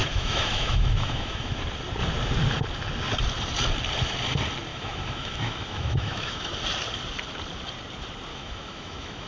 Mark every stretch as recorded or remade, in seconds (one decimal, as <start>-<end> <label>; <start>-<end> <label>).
0.0-1.6 remade; 1.6-4.7 recorded; 4.7-6.5 remade; 6.5-8.3 recorded; 8.3-9.3 remade